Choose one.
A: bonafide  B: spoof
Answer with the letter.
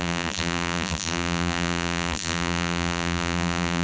B